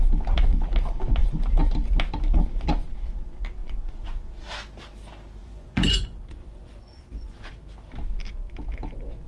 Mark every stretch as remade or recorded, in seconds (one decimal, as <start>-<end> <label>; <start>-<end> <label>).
0.0-3.6 recorded; 3.6-4.3 remade; 4.3-5.4 recorded; 5.4-7.5 remade; 7.5-9.3 recorded